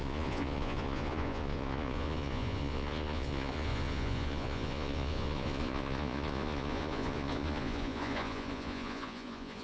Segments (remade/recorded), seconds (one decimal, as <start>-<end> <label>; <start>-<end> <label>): 0.0-9.6 remade